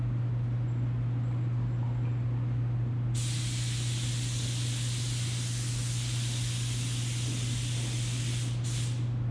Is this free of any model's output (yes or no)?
yes